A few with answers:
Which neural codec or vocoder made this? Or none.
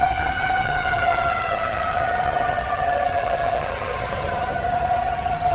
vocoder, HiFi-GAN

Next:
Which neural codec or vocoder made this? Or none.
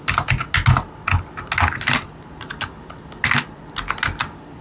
none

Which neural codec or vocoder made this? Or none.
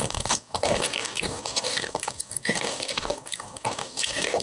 codec, DAC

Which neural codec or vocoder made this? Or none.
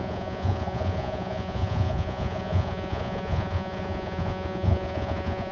vocoder, Vocos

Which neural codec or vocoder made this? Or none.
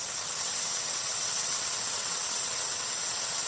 vocoder, WaveNeXt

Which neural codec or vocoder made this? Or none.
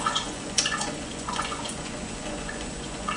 vocoder, Vocos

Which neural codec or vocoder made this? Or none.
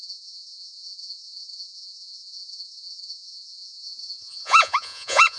vocoder, Vocos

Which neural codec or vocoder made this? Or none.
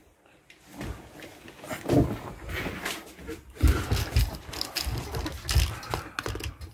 none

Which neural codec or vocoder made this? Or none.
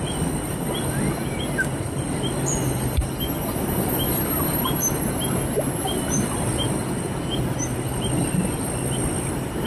none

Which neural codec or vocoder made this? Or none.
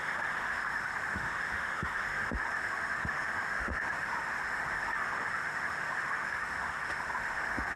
autoencoder, DAC-VAE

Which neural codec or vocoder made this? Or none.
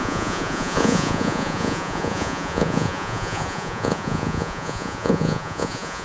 vocoder, Vocos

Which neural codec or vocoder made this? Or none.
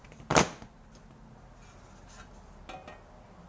none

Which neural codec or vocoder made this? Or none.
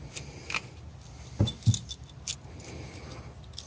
none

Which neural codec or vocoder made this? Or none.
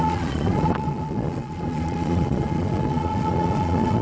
vocoder, Vocos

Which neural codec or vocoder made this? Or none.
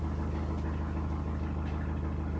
none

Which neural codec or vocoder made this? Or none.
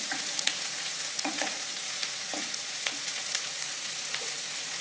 vocoder, Vocos